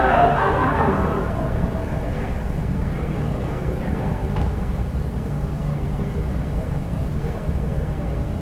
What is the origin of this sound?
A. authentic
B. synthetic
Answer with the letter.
B